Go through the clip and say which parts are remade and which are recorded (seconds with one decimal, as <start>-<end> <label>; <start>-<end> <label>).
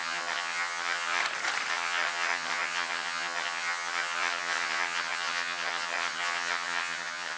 0.0-1.2 remade; 1.2-1.7 recorded; 1.7-7.4 remade